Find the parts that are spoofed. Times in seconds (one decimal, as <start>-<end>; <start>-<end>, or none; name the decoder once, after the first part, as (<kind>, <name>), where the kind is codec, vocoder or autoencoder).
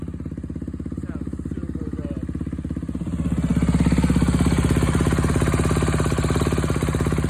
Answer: none